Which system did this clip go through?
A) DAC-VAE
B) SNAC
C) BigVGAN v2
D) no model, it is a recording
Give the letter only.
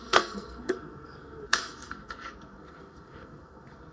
B